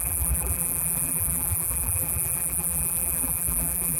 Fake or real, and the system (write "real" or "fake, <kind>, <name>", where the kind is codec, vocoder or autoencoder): fake, vocoder, BigVGAN v2